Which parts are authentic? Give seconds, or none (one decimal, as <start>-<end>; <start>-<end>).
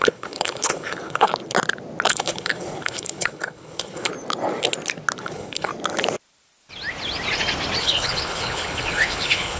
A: 1.3-2.1; 4.1-5.2; 5.7-7.8